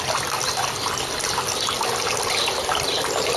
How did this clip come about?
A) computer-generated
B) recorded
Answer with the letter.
B